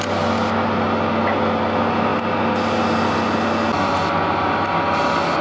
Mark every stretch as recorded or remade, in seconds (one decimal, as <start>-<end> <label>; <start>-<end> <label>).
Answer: 0.0-5.4 recorded